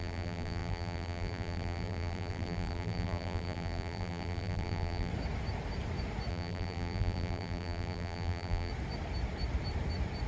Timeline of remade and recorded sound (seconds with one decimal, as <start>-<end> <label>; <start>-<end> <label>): 0.0-5.1 remade; 5.1-6.3 recorded; 6.3-8.7 remade; 8.7-10.3 recorded